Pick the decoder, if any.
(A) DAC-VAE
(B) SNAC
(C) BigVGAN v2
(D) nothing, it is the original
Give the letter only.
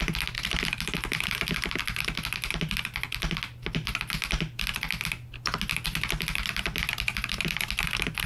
D